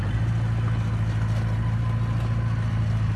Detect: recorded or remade recorded